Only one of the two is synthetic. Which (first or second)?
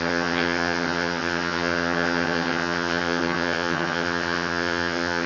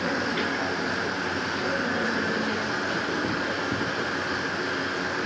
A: first